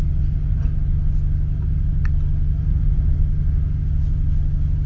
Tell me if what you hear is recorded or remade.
recorded